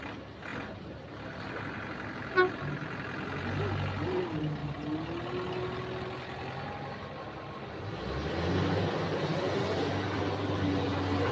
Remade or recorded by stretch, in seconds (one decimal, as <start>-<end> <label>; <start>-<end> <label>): 0.0-11.3 recorded